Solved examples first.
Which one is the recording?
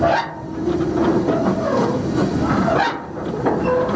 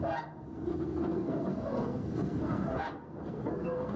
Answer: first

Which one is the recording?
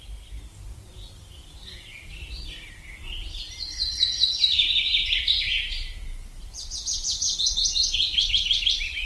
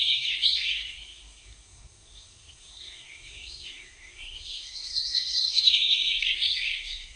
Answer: first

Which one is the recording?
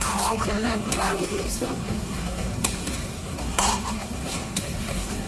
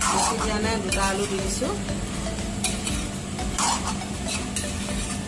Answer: second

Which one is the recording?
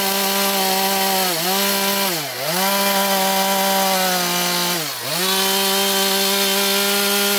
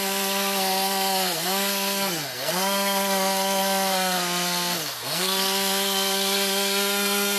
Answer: first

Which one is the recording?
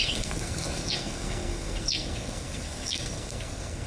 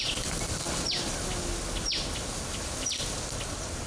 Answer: second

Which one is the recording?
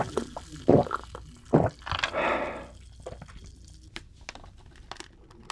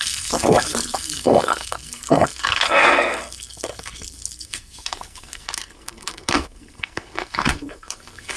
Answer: first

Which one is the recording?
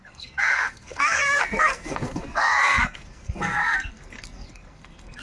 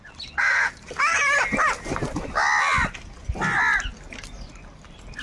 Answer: second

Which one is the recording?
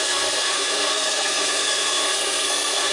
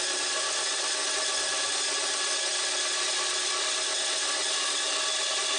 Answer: second